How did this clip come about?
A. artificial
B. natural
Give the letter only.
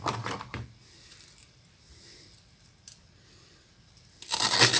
A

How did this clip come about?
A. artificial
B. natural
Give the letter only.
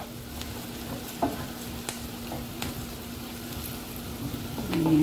B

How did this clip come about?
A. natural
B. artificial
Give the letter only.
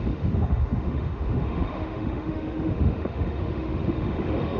B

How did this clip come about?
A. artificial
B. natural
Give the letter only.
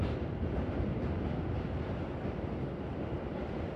B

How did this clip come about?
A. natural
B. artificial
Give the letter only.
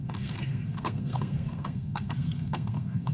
B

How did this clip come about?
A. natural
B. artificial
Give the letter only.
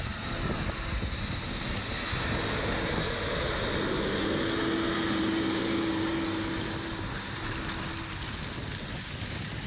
A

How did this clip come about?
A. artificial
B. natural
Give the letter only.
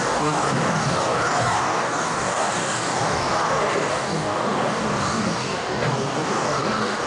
A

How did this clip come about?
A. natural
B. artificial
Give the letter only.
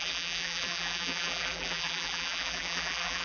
B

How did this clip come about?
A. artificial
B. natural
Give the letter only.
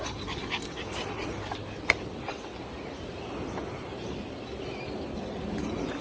B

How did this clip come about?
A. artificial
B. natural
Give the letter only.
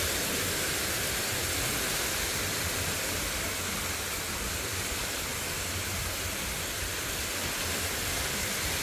B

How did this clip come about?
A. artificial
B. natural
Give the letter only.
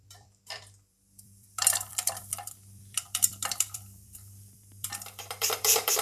A